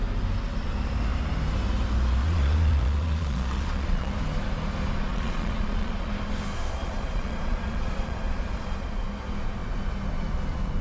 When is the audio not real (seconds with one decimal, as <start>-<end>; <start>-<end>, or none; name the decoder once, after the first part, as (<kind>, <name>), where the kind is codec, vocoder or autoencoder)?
2.2-4.1 (vocoder, Vocos); 5.1-6.1; 6.8-8.9